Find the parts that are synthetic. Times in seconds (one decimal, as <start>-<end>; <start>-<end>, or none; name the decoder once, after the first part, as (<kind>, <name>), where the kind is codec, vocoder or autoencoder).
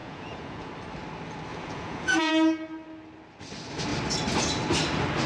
0.0-0.7 (vocoder, Vocos); 1.5-2.3